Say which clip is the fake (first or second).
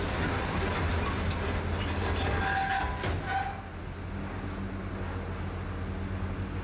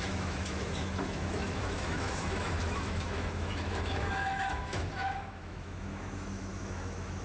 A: second